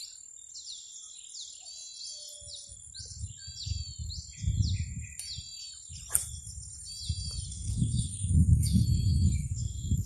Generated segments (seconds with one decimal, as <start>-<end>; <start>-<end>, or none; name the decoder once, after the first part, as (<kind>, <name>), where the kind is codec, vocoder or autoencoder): 7.5-10.1 (codec, SNAC)